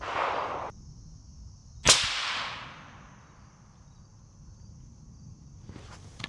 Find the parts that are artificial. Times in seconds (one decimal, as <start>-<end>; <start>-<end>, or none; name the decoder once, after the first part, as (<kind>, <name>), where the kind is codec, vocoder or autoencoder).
none